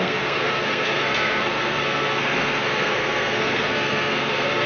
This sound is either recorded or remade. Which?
remade